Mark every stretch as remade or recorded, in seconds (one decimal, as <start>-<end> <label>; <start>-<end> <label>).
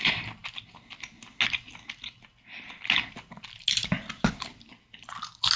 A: 0.0-5.6 recorded